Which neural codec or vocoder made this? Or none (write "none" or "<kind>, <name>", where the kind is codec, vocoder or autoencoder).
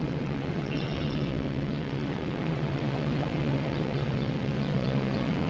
vocoder, WaveNeXt